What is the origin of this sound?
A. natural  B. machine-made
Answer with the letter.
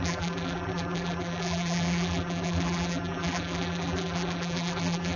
B